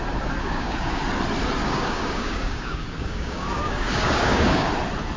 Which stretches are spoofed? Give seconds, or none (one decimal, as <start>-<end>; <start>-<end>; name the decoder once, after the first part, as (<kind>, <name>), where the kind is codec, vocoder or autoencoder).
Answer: 0.4-1.0 (codec, DAC); 1.6-4.7